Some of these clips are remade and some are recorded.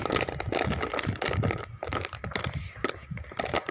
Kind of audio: recorded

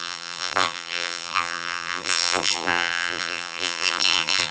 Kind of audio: remade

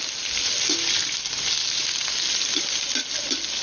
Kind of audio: recorded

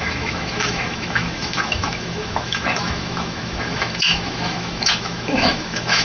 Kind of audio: remade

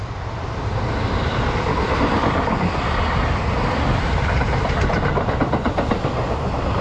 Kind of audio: recorded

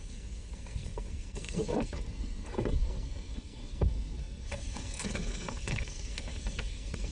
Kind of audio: remade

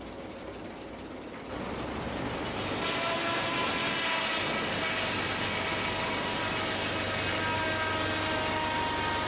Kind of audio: recorded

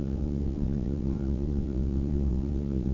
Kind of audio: remade